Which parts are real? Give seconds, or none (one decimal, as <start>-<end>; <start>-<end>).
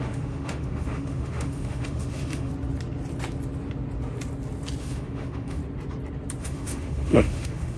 2.5-4.8; 5.6-6.4